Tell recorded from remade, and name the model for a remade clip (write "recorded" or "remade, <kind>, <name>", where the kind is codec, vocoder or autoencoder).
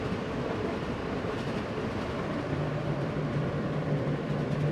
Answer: recorded